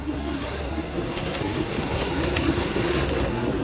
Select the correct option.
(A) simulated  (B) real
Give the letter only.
A